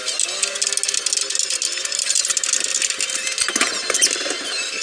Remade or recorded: recorded